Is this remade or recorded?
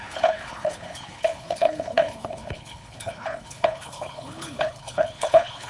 remade